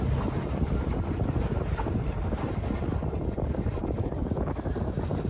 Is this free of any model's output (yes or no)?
yes